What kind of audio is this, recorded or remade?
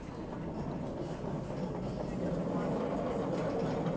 recorded